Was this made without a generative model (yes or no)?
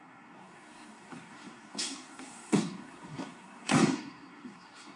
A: no